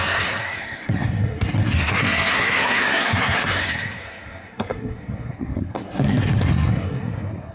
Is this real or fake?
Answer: fake